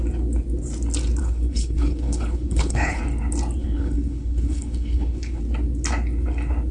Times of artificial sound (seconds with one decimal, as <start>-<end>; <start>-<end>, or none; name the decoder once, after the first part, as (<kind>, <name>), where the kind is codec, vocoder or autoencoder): 1.2-3.0 (codec, HILCodec); 3.6-5.4